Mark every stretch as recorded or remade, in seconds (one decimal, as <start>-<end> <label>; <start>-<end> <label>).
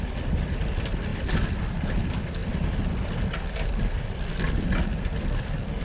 0.0-5.8 recorded